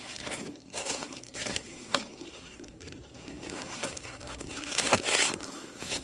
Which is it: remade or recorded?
remade